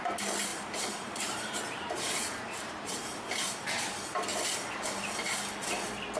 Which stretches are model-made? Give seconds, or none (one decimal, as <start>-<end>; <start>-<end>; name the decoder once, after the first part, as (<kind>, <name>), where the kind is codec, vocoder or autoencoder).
0.5-3.4 (vocoder, BigVGAN v2)